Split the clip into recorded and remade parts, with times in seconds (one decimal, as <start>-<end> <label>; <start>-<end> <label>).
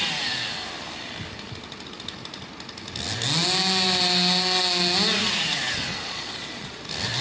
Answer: 0.0-5.9 recorded; 5.9-6.8 remade; 6.8-7.2 recorded